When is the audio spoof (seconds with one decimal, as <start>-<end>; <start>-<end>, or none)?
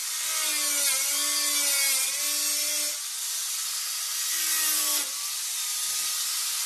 none